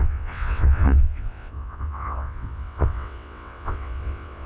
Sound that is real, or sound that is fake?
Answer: fake